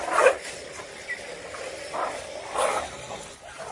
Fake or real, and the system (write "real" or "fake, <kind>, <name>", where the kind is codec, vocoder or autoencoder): real